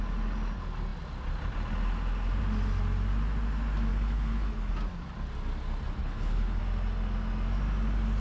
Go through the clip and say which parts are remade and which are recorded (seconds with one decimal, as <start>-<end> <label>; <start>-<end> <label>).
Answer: 0.0-3.9 recorded; 3.9-4.7 remade; 4.7-6.0 recorded; 6.0-6.6 remade; 6.6-8.2 recorded